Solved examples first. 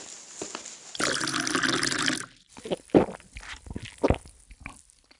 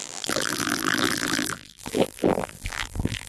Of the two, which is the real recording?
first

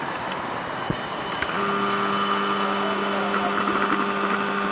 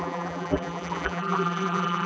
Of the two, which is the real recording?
first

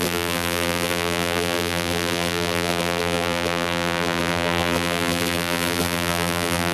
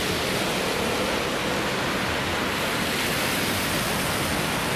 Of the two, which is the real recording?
second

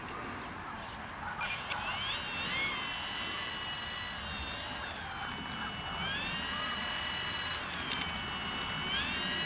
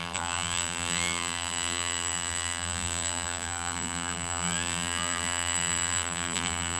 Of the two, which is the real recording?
first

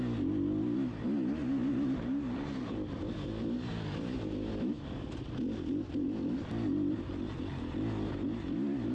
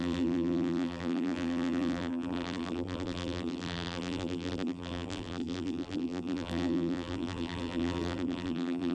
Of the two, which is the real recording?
first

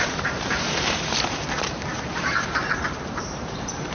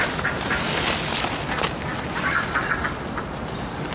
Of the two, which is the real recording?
second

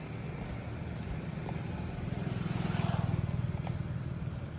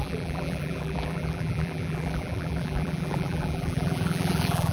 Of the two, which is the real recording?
first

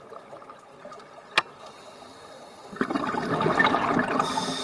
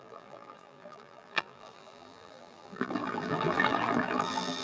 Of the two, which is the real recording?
first